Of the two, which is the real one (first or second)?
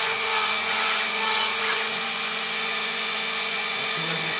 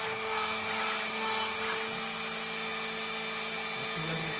second